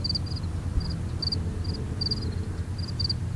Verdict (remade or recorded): recorded